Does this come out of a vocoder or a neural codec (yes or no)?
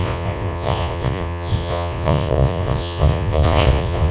yes